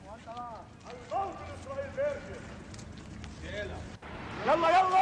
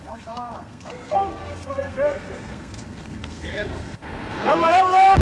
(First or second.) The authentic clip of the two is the first